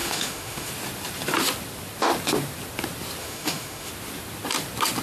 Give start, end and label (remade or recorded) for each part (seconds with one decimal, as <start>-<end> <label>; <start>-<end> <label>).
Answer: 0.0-0.7 remade; 0.7-3.2 recorded; 3.2-3.9 remade; 3.9-5.0 recorded